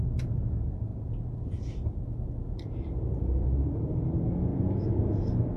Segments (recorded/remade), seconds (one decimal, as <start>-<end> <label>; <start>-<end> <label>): 0.0-0.9 recorded; 0.9-4.1 remade; 4.1-5.6 recorded